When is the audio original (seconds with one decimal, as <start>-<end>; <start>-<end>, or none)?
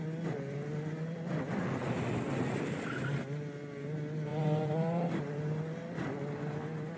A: 0.0-4.3; 5.2-7.0